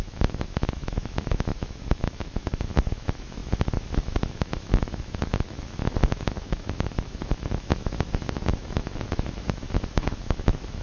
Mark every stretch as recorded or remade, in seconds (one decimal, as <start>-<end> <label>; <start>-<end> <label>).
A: 0.0-10.8 remade

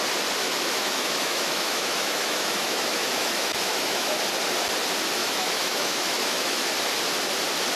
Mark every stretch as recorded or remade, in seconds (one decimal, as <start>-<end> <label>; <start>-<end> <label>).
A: 0.0-0.4 recorded; 0.4-4.2 remade; 4.2-5.2 recorded; 5.2-6.6 remade; 6.6-7.8 recorded

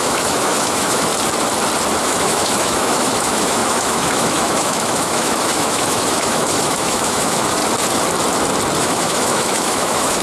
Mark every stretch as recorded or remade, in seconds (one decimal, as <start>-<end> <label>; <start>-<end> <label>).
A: 0.0-1.1 remade; 1.1-2.0 recorded; 2.0-7.6 remade; 7.6-8.8 recorded; 8.8-10.2 remade

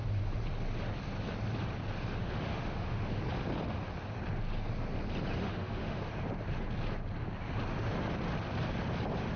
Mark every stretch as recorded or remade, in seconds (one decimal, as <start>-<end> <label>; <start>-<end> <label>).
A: 0.0-2.2 recorded; 2.2-3.2 remade; 3.2-5.4 recorded; 5.4-6.0 remade; 6.0-9.4 recorded

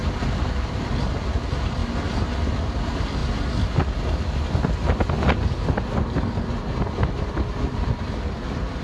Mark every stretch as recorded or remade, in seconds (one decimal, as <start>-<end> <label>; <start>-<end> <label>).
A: 0.0-8.8 recorded

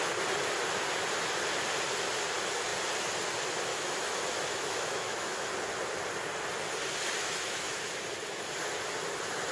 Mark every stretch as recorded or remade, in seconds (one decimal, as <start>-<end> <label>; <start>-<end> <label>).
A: 0.0-3.7 recorded; 3.7-5.5 remade; 5.5-7.2 recorded; 7.2-7.8 remade; 7.8-9.5 recorded

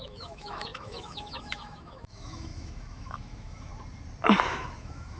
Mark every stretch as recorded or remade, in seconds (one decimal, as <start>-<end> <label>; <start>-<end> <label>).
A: 0.0-3.7 remade; 3.7-4.5 recorded; 4.5-5.2 remade